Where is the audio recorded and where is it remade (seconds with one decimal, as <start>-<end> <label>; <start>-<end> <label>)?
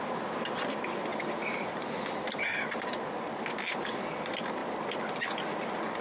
0.0-6.0 recorded